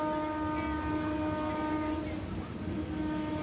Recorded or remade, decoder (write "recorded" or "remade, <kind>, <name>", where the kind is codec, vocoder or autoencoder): recorded